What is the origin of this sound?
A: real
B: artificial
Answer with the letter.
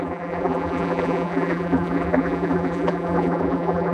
B